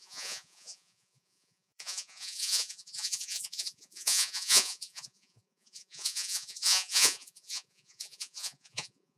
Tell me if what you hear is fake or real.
fake